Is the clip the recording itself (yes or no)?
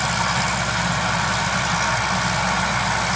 yes